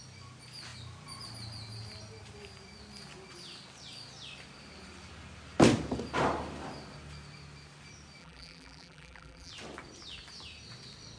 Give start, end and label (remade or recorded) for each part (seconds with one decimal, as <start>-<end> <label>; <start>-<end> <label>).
0.0-8.2 recorded; 8.2-9.5 remade; 9.5-11.2 recorded